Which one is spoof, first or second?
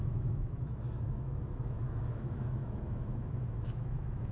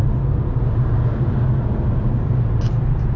first